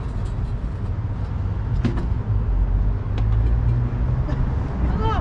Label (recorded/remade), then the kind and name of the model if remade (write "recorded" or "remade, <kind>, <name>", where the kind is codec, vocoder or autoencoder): recorded